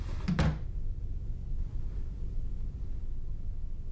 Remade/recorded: recorded